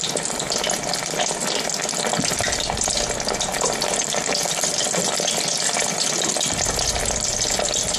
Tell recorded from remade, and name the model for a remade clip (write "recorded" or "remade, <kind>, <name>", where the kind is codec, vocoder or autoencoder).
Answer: recorded